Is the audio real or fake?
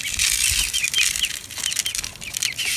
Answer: real